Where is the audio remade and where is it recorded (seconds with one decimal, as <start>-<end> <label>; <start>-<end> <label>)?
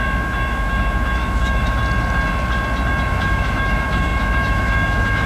0.0-1.8 remade; 1.8-3.1 recorded; 3.1-5.3 remade